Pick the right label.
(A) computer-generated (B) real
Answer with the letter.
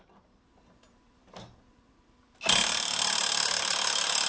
B